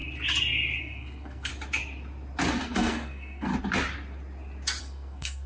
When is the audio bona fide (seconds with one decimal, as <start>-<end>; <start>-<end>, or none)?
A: 0.0-0.8; 1.5-2.6; 3.5-4.8